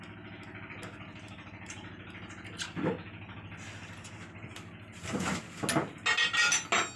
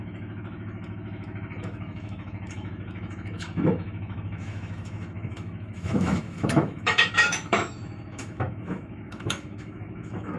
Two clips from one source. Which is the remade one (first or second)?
second